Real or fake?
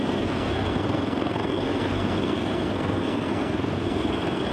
fake